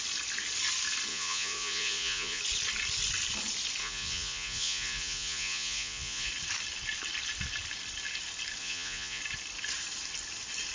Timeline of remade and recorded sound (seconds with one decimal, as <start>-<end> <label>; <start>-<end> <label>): 0.0-1.1 recorded; 1.1-2.4 remade; 2.4-3.8 recorded; 3.8-6.3 remade; 6.3-8.6 recorded; 8.6-9.2 remade; 9.2-10.7 recorded